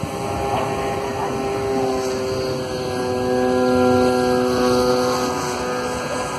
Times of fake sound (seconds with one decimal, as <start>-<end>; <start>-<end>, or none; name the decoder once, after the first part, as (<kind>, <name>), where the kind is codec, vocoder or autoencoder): none